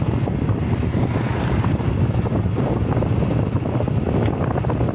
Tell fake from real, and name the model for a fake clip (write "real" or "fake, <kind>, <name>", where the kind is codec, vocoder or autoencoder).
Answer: real